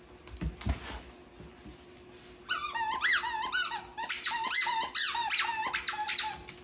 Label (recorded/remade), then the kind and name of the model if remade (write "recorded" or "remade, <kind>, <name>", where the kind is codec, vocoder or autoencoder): recorded